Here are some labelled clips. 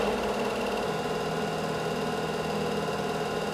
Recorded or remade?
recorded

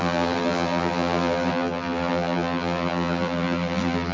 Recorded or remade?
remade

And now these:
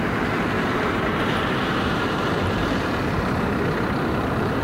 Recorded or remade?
remade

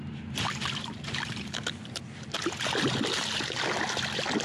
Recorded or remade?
recorded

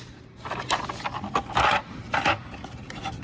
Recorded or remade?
remade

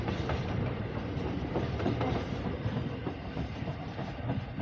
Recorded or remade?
remade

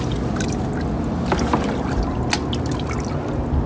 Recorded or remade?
recorded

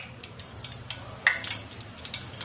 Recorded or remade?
recorded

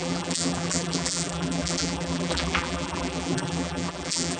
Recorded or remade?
remade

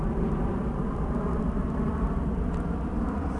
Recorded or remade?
remade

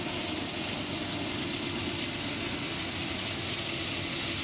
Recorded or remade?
recorded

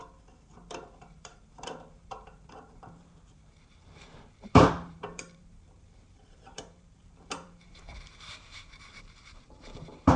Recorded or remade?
remade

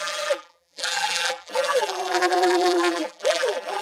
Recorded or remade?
remade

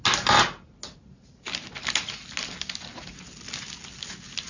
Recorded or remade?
recorded